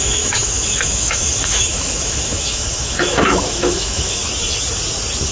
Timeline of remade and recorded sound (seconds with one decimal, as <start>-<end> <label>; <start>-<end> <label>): 0.0-4.2 remade; 4.2-5.3 recorded